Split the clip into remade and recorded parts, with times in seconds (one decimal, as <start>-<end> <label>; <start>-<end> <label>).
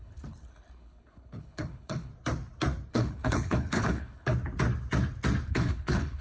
0.0-2.1 remade; 2.1-2.9 recorded; 2.9-4.3 remade; 4.3-5.5 recorded; 5.5-6.2 remade